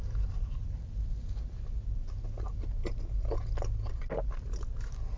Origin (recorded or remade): recorded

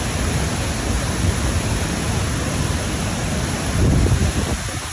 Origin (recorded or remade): recorded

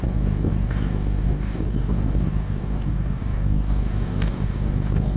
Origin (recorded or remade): remade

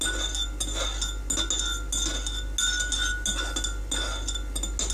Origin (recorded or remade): recorded